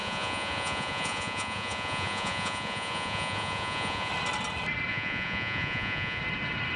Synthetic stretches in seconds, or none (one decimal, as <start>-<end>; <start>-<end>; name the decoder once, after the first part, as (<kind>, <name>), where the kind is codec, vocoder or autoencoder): 0.0-4.1 (vocoder, Vocos); 4.9-6.2